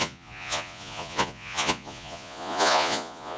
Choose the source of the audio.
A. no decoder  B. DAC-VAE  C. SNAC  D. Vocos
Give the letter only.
D